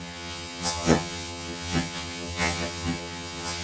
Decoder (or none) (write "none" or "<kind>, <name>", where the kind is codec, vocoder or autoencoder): vocoder, HiFi-GAN